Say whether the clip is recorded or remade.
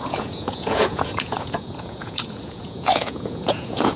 remade